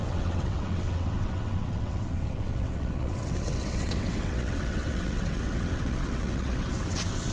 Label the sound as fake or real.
fake